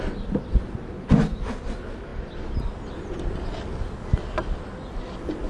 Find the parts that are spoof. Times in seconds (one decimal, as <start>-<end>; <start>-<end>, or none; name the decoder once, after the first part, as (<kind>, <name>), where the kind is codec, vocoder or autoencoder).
none